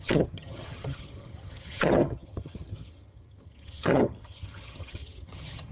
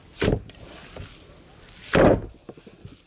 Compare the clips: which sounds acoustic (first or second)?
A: second